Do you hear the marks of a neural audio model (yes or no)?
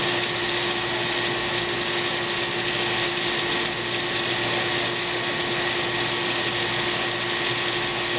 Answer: no